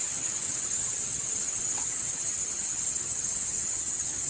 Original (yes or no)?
no